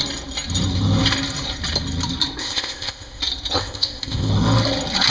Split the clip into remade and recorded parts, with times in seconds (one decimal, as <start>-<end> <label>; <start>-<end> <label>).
0.0-2.4 recorded; 2.4-3.2 remade; 3.2-3.6 recorded; 3.6-4.3 remade; 4.3-5.1 recorded